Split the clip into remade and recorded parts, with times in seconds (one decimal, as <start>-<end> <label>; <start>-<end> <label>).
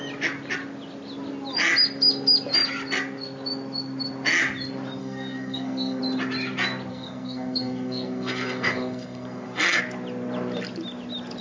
0.0-5.0 recorded; 5.0-6.0 remade; 6.0-6.9 recorded; 6.9-9.8 remade; 9.8-11.4 recorded